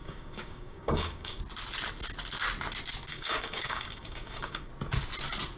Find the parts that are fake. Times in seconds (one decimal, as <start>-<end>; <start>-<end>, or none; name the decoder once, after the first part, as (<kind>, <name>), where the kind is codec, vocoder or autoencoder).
0.0-1.4 (codec, DAC); 3.1-4.7